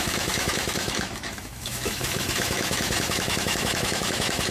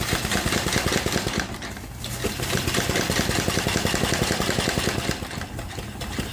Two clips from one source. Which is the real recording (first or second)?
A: second